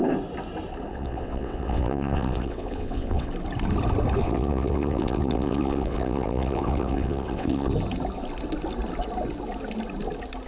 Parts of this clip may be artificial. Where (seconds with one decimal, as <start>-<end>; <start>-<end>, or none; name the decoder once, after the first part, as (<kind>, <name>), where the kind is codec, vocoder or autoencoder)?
0.9-3.3 (vocoder, WaveNeXt); 4.2-7.7

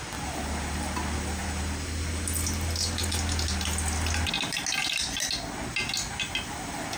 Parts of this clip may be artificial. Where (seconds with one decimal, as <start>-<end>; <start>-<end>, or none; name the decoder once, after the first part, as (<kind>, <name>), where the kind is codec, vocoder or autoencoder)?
none

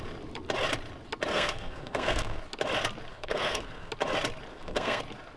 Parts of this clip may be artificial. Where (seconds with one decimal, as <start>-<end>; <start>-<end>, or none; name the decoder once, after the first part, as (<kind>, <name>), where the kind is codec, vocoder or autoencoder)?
1.3-2.4 (codec, SNAC); 3.1-3.9; 4.5-5.0

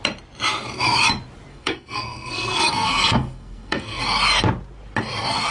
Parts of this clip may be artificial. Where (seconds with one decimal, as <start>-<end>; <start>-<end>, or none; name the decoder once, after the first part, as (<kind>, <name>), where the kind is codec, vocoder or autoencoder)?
1.5-4.0 (codec, SNAC)

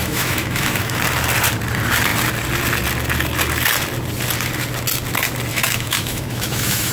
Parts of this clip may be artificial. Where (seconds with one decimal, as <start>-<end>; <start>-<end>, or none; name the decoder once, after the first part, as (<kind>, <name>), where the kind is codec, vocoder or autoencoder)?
0.0-1.0 (autoencoder, DAC-VAE); 5.5-6.9

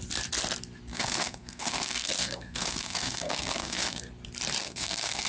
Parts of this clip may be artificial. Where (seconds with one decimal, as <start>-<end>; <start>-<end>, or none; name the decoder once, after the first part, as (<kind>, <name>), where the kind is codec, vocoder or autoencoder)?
0.9-4.1 (codec, SNAC); 4.6-5.3

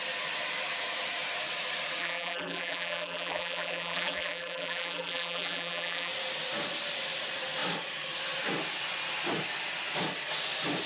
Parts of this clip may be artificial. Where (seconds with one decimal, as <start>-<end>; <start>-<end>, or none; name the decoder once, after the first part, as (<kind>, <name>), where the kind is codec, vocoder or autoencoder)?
2.0-6.1 (vocoder, BigVGAN v2)